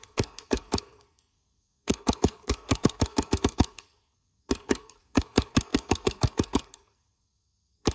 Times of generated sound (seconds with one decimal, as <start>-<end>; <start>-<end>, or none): 0.0-7.9

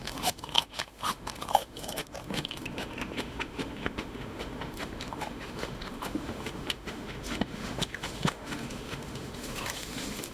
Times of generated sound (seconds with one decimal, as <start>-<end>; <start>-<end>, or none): 0.0-10.3

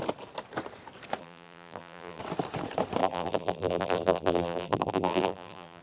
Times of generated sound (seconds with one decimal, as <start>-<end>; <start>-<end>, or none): 1.2-2.2; 3.0-5.8

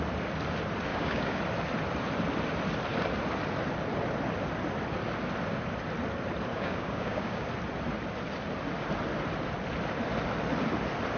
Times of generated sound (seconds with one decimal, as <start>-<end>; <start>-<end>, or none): 0.9-1.4; 6.5-7.5

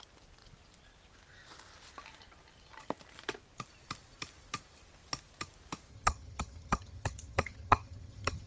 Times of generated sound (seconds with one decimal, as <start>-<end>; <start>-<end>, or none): 5.9-8.5

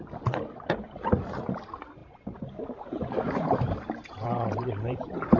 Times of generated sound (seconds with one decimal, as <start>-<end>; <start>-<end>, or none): 2.0-5.4

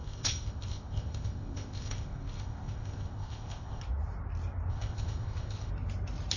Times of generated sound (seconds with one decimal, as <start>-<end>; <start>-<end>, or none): 0.0-3.8; 4.7-5.7